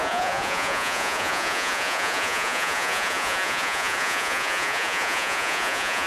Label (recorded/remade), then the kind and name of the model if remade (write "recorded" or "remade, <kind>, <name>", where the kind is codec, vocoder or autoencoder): remade, vocoder, Vocos